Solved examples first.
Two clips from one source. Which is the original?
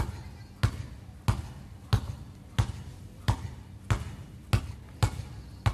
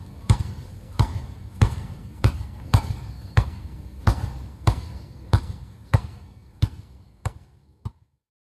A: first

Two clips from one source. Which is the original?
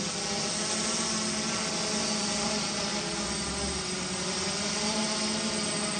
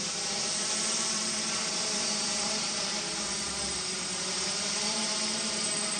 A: first